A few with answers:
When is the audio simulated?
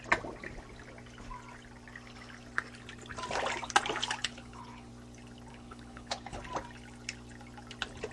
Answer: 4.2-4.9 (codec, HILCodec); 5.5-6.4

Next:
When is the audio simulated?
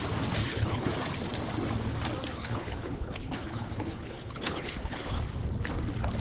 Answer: 0.4-0.9 (codec, HILCodec); 2.4-5.2